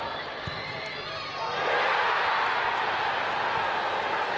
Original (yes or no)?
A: yes